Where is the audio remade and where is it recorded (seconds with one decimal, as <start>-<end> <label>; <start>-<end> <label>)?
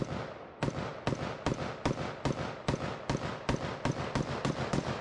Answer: 0.0-5.0 recorded